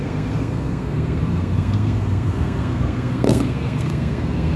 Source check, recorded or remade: remade